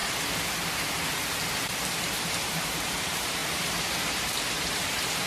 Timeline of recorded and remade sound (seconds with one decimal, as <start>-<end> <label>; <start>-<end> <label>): 0.0-2.0 recorded; 2.0-5.3 remade